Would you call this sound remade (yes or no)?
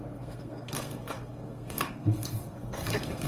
yes